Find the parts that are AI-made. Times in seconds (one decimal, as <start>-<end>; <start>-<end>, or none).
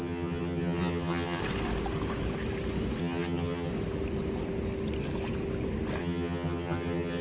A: 0.0-1.4; 3.0-3.7; 6.0-7.2